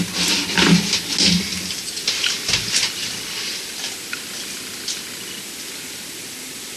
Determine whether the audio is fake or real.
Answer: real